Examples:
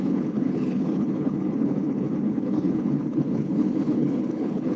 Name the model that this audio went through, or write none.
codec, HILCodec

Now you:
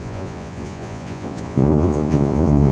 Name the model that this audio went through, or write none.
vocoder, Vocos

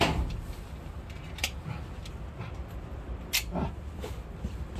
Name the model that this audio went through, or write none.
none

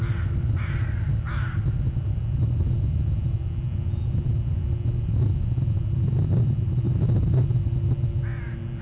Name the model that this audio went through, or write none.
none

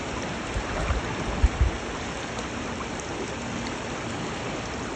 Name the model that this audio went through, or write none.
none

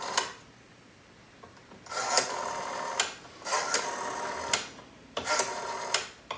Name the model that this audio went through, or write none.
none